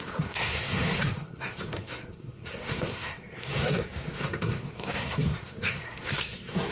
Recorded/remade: remade